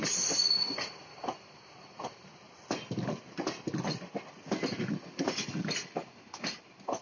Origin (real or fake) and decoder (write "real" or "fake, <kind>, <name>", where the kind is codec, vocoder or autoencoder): real